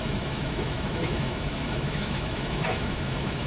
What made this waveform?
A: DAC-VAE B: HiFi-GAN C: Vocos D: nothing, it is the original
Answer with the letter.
A